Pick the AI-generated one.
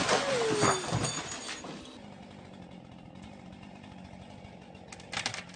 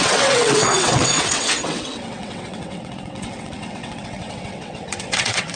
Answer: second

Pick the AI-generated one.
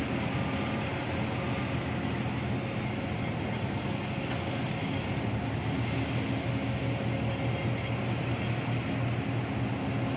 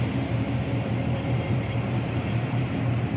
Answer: second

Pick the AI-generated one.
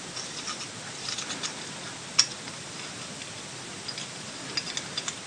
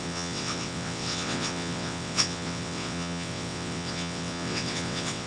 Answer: second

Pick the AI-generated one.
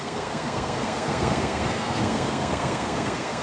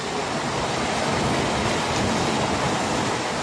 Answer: first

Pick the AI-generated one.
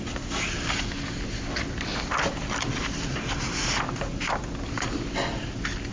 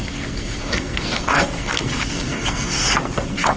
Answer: second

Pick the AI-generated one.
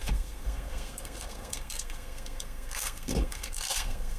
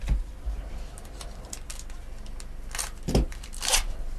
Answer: first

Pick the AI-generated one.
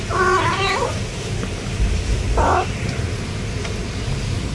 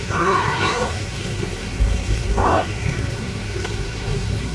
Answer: second